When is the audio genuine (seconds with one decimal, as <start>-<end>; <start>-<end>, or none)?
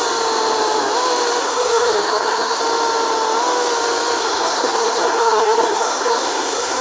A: 0.0-1.4; 2.6-4.2